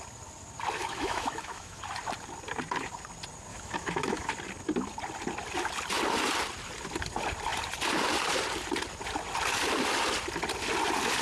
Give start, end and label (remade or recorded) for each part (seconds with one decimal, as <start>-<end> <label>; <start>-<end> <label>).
0.0-0.8 recorded; 0.8-1.8 remade; 1.8-3.5 recorded; 3.5-4.3 remade; 4.3-11.2 recorded